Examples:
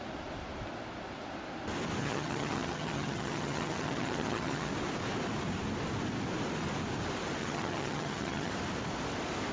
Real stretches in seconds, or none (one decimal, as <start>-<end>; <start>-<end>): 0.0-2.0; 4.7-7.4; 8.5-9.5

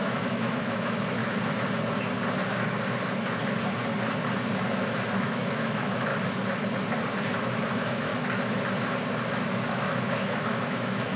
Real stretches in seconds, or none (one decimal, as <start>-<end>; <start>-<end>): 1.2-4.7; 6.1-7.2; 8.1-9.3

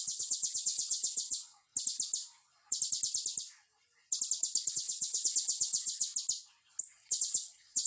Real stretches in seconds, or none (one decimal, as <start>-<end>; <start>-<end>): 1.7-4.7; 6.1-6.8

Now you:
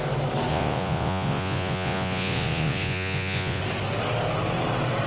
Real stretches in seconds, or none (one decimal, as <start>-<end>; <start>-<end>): 0.0-0.5; 3.6-5.1

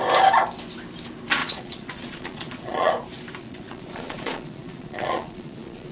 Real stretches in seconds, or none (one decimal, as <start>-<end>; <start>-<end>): 0.0-1.4; 2.9-3.4

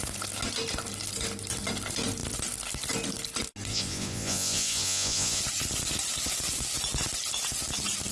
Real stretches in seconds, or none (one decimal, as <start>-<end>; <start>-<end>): 0.0-3.7; 5.4-8.1